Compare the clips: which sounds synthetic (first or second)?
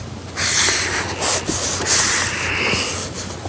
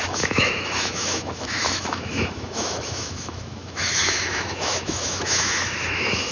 second